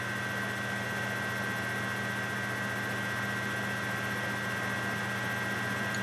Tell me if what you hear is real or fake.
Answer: real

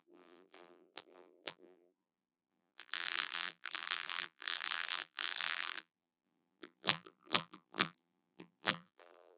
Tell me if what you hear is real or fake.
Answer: fake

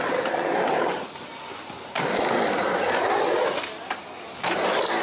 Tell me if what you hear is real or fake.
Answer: real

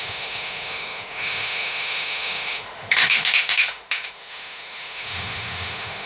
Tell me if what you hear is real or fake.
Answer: fake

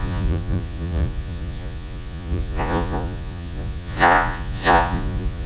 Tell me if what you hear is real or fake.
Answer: fake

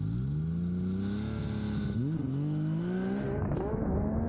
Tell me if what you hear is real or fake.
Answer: real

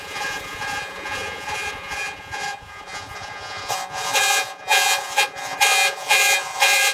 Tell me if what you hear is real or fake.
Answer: fake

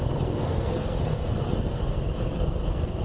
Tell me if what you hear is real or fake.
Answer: fake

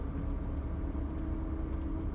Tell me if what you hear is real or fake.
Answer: real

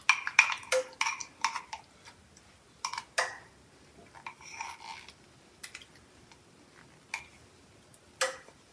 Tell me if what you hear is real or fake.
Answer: real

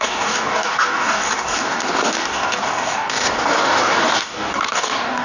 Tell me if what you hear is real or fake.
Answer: fake